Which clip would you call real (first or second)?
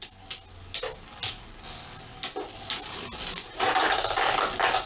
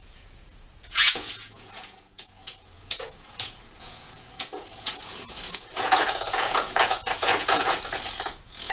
first